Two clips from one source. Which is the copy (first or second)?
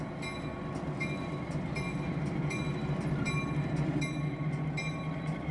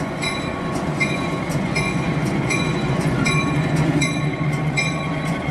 second